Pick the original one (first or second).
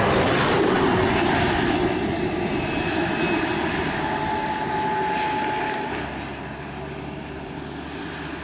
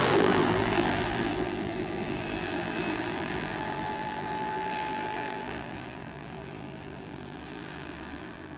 first